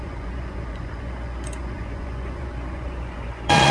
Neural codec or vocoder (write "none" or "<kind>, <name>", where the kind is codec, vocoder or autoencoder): vocoder, Vocos